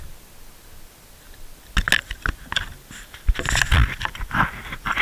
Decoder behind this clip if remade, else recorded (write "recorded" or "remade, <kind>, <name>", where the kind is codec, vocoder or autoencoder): recorded